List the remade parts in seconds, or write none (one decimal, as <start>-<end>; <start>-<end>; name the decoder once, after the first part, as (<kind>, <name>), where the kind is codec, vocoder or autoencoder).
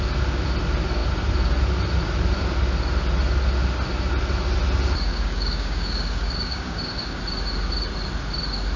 5.1-7.2 (codec, DAC)